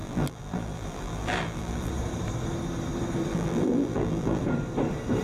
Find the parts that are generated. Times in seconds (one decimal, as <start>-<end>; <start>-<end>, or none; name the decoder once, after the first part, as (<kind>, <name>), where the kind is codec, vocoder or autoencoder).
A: 0.0-1.9 (vocoder, BigVGAN v2); 3.3-4.4